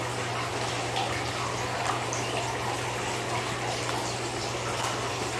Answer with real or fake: real